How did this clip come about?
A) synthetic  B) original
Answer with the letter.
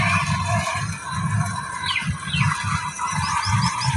B